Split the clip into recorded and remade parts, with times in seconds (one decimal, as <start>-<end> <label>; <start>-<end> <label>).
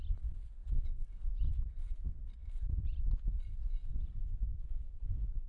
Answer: 0.0-2.4 recorded; 2.4-3.3 remade; 3.3-3.9 recorded; 3.9-5.0 remade; 5.0-5.5 recorded